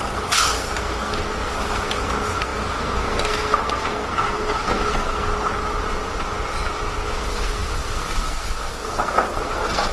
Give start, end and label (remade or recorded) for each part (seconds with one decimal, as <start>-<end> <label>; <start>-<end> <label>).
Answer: 0.0-5.3 remade; 5.3-7.0 recorded; 7.0-9.9 remade